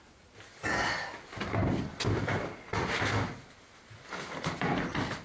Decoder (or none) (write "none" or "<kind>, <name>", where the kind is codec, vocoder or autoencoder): none